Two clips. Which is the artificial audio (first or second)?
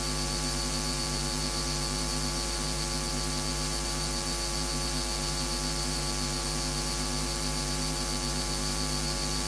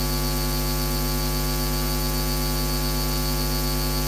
first